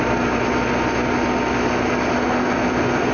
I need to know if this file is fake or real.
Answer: real